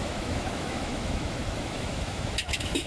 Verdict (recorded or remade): remade